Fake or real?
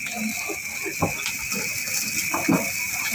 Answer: real